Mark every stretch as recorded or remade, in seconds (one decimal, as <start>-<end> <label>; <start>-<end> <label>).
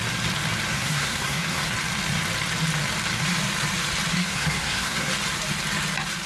0.0-0.7 recorded; 0.7-1.7 remade; 1.7-4.1 recorded; 4.1-5.1 remade; 5.1-6.3 recorded